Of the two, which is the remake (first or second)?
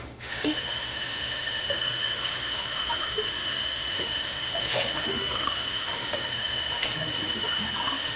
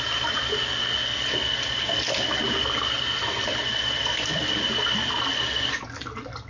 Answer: first